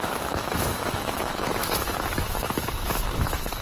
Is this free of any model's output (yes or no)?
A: no